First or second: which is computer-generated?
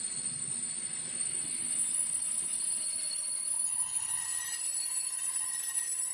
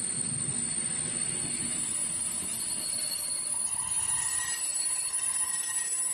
first